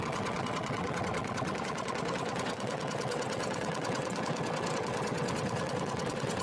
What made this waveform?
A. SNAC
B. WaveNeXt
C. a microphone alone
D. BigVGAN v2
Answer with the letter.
B